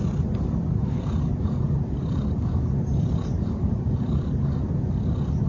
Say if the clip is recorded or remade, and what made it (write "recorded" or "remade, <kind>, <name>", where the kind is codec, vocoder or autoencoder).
recorded